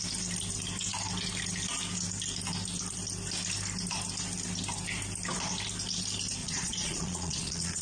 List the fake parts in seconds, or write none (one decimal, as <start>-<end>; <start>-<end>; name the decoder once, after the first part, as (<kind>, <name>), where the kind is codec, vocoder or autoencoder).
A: 6.4-7.8 (vocoder, Vocos)